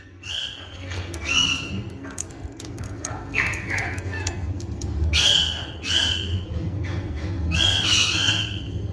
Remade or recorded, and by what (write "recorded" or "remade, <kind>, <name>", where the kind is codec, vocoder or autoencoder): remade, codec, SNAC